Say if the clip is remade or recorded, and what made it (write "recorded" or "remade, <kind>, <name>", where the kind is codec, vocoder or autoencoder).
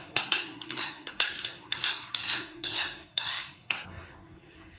remade, codec, SNAC